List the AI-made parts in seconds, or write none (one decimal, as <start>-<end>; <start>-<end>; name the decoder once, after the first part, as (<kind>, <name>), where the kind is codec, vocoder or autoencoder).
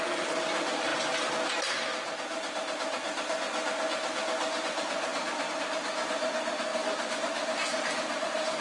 6.7-8.6 (vocoder, BigVGAN v2)